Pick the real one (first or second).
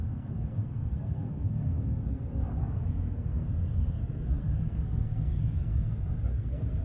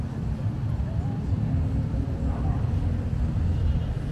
second